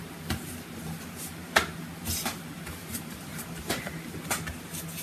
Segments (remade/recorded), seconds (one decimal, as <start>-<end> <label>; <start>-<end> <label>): 0.0-1.3 recorded; 1.3-1.9 remade; 1.9-2.8 recorded; 2.8-3.8 remade; 3.8-5.0 recorded